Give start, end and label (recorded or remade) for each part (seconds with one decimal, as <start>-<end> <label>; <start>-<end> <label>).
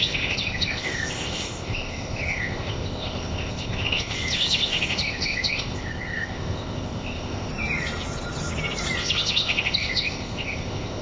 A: 0.0-7.5 remade; 7.5-9.0 recorded; 9.0-11.0 remade